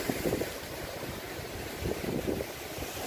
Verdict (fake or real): real